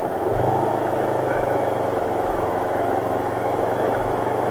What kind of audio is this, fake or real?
fake